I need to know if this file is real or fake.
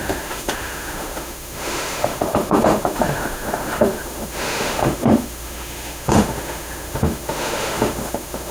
fake